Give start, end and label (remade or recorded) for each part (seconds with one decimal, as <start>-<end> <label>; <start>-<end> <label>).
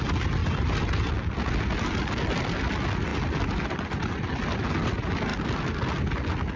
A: 0.0-3.1 recorded; 3.1-3.9 remade; 3.9-6.6 recorded